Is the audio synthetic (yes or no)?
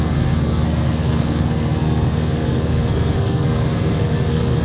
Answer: yes